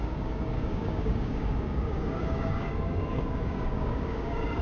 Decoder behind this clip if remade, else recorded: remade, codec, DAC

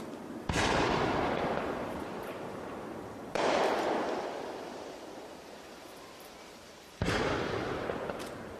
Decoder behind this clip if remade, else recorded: remade, vocoder, BigVGAN v2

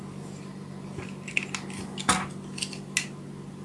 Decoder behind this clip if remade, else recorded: recorded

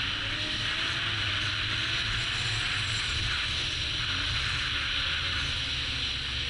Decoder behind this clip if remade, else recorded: recorded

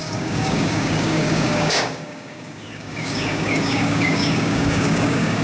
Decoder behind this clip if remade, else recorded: remade, codec, DAC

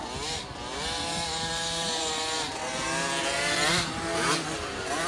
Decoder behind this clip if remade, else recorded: recorded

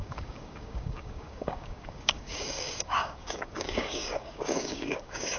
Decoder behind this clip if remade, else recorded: remade, codec, DAC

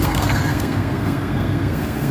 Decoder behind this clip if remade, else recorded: remade, codec, SNAC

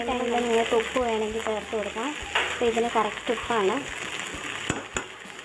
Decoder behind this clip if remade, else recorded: recorded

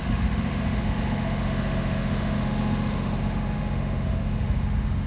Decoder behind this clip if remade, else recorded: remade, autoencoder, DAC-VAE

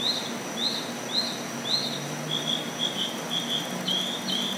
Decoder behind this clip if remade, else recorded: recorded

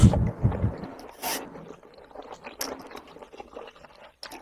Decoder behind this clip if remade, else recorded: recorded